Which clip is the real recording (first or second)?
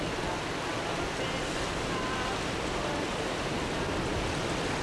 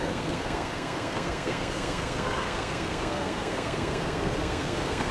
first